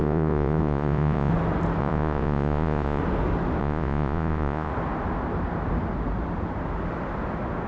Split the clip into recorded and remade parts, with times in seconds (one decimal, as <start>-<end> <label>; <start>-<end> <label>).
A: 0.0-1.3 remade; 1.3-1.8 recorded; 1.8-3.0 remade; 3.0-3.6 recorded; 3.6-4.7 remade; 4.7-7.7 recorded